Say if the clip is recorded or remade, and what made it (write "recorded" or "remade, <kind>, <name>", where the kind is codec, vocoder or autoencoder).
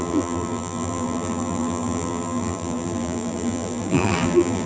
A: remade, vocoder, BigVGAN v2